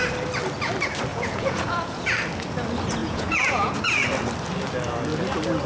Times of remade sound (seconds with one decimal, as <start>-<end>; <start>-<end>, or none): 1.1-2.0; 3.0-3.8